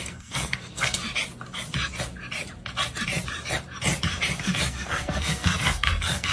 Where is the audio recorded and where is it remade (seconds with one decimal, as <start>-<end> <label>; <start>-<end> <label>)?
0.0-1.0 remade; 1.0-4.4 recorded; 4.4-6.3 remade